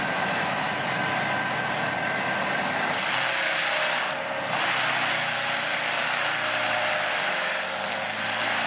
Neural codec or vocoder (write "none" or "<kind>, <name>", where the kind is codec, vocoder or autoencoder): none